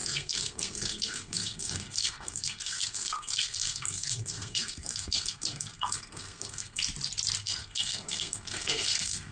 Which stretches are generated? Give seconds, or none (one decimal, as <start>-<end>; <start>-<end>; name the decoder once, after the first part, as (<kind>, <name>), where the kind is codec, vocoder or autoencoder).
0.0-6.8 (codec, SNAC); 7.4-9.3